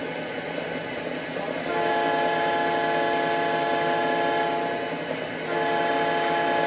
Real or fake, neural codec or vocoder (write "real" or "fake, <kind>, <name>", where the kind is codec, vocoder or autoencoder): real